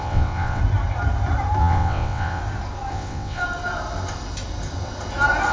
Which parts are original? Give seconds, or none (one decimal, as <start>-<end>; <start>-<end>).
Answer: 0.6-1.6; 2.4-2.9; 3.4-5.5